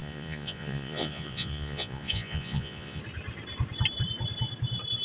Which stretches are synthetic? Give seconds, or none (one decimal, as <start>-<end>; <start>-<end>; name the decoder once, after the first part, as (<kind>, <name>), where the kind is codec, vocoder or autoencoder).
0.0-3.0 (vocoder, Vocos)